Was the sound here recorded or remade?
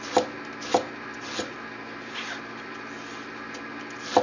recorded